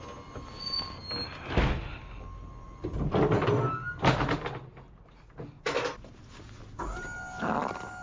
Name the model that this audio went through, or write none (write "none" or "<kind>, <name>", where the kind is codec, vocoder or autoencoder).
none